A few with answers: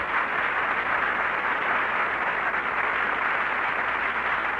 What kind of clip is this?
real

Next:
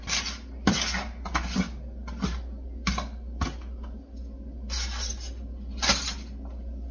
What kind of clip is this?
real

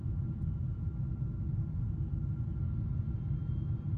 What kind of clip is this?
real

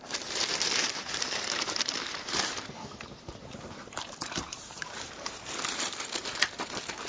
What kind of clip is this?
fake